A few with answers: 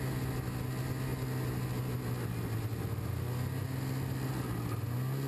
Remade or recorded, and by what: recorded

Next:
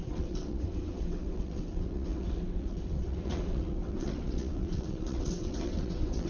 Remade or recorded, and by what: remade, vocoder, WaveNeXt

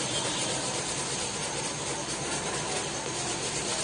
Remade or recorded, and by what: recorded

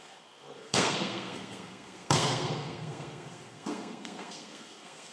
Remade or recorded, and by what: remade, codec, SNAC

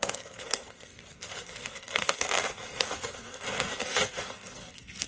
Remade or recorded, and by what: remade, codec, SNAC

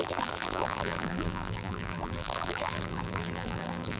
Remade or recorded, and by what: remade, vocoder, BigVGAN v2